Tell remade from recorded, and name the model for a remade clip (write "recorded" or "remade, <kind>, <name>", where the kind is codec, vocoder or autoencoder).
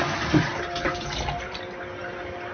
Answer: recorded